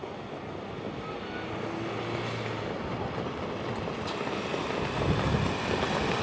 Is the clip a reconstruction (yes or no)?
no